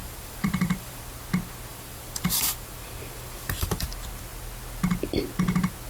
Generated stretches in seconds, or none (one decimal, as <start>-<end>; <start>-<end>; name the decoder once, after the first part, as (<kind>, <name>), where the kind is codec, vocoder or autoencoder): 0.0-1.0 (vocoder, BigVGAN v2); 1.7-3.9